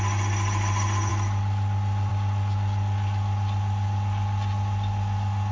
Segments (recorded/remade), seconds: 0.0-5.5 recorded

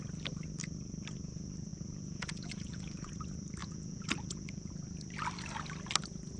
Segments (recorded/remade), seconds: 0.0-1.7 recorded; 1.7-3.1 remade; 3.1-3.6 recorded; 3.6-4.7 remade; 4.7-6.4 recorded

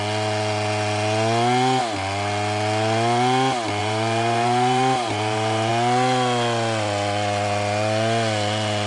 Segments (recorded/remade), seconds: 0.0-3.8 recorded; 3.8-5.7 remade; 5.7-8.9 recorded

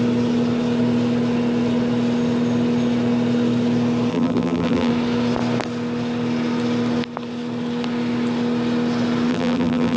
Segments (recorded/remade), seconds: 0.0-4.1 recorded; 4.1-4.9 remade; 4.9-9.3 recorded; 9.3-10.0 remade